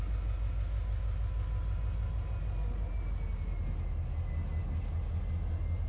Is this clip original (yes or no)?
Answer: yes